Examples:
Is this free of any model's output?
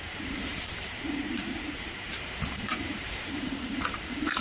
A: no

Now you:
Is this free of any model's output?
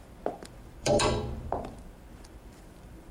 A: no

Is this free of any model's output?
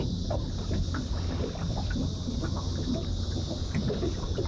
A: yes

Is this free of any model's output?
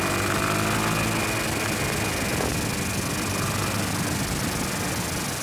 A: yes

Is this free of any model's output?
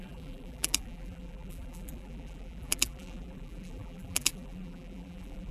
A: no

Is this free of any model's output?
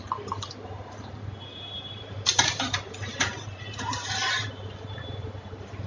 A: no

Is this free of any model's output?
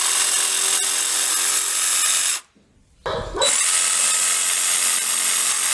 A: yes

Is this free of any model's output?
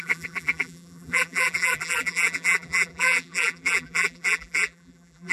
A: no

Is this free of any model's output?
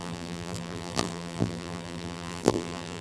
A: no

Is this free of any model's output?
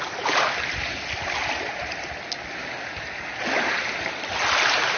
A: yes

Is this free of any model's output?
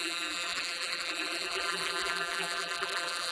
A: no